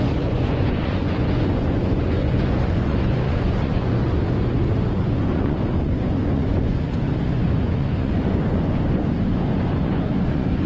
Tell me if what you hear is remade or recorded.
remade